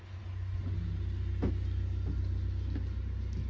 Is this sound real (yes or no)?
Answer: yes